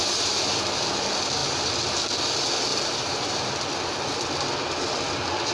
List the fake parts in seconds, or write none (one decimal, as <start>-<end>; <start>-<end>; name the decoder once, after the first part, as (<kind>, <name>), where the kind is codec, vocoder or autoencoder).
2.7-3.5 (vocoder, BigVGAN v2)